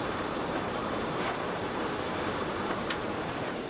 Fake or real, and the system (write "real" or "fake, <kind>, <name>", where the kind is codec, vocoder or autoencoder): fake, vocoder, BigVGAN v2